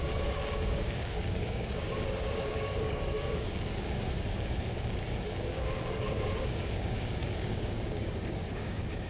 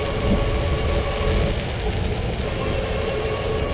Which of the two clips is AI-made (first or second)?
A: first